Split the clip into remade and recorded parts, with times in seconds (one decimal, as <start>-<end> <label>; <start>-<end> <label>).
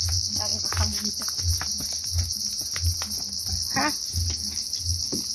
0.0-5.3 recorded